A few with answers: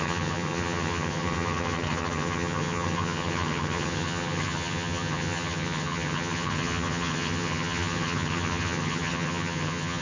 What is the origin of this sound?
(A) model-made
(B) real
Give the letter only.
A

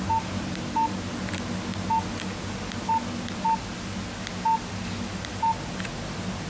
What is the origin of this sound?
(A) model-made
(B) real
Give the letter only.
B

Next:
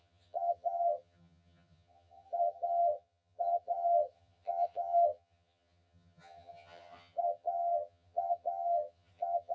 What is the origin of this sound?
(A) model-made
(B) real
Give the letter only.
A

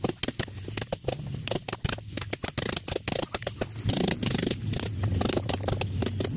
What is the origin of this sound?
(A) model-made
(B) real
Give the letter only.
B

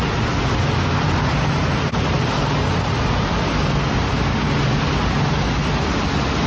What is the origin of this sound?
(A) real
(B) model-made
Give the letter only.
A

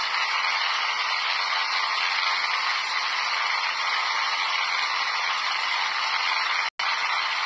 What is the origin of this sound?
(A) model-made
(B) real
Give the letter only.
B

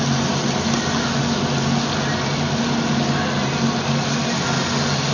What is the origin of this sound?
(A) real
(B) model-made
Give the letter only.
A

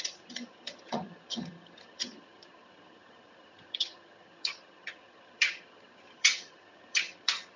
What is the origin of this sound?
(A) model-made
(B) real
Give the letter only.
A